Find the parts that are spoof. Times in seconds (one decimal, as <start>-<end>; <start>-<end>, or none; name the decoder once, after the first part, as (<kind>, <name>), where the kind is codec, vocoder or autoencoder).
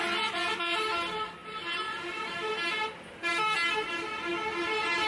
1.4-2.5 (vocoder, BigVGAN v2)